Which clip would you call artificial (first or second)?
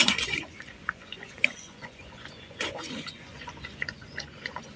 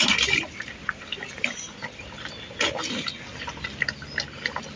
first